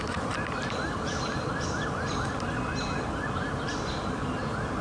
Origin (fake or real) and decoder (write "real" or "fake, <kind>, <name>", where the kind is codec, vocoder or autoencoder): real